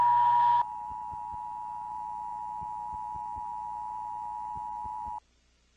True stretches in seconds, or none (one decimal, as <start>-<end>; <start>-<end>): 0.0-0.5; 1.9-5.8